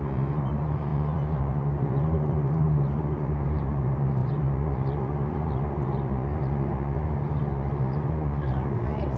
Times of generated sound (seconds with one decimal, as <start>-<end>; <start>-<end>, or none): 0.0-9.2